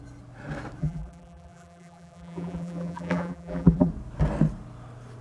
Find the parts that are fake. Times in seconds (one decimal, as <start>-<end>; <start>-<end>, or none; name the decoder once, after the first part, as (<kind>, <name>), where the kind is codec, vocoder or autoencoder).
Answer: 0.8-3.9 (vocoder, BigVGAN v2)